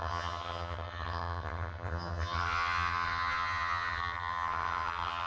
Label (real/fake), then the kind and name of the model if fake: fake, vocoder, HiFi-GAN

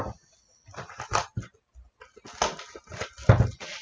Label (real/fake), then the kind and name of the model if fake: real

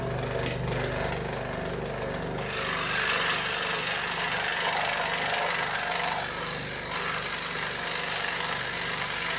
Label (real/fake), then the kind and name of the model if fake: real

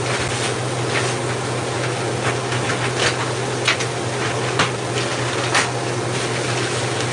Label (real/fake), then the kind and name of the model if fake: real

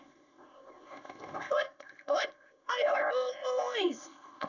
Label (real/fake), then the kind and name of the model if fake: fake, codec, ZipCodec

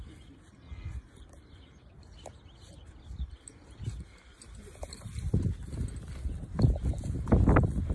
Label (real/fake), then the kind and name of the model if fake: real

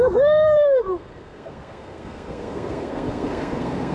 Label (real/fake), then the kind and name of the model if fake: fake, codec, SNAC